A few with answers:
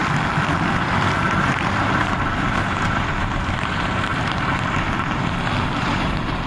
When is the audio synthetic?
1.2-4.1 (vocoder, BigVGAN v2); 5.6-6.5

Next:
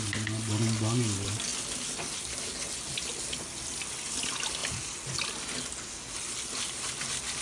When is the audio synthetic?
none

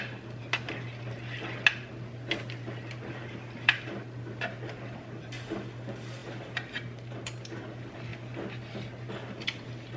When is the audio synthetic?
0.0-0.4 (vocoder, BigVGAN v2); 3.1-8.1; 9.1-10.0

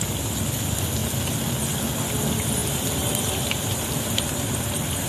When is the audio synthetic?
2.6-4.5 (vocoder, BigVGAN v2)

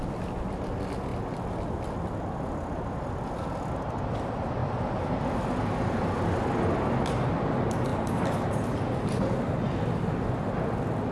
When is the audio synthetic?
7.9-10.5 (vocoder, BigVGAN v2)

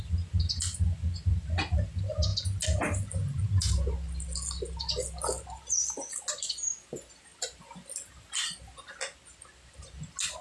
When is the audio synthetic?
none

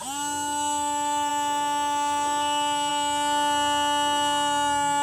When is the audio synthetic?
none

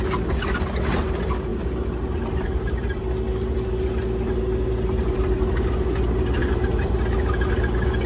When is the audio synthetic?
1.5-3.1 (vocoder, BigVGAN v2); 6.4-6.9